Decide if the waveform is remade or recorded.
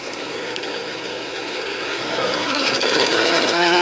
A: remade